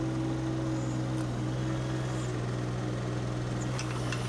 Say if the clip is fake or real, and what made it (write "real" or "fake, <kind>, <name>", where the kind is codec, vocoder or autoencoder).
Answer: real